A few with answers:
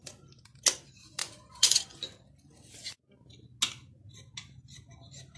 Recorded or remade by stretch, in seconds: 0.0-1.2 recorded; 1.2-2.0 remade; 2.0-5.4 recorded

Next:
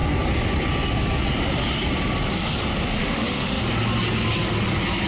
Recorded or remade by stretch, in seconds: 0.0-3.0 recorded; 3.0-3.6 remade; 3.6-5.1 recorded

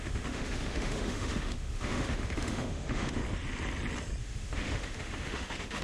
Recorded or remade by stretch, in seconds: 0.0-3.2 remade; 3.2-4.2 recorded; 4.2-5.8 remade

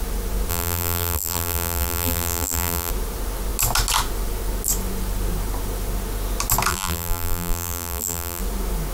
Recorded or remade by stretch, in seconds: 0.0-0.5 recorded; 0.5-2.9 remade; 2.9-6.7 recorded; 6.7-8.4 remade; 8.4-8.9 recorded

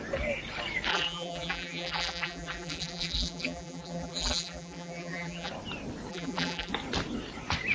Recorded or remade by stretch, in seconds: 0.0-0.9 recorded; 0.9-5.5 remade; 5.5-6.1 recorded; 6.1-6.7 remade; 6.7-7.7 recorded